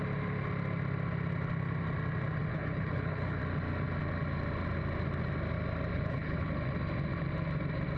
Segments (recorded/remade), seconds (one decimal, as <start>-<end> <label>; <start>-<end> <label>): 0.0-2.5 recorded; 2.5-3.4 remade; 3.4-5.9 recorded; 5.9-6.5 remade; 6.5-8.0 recorded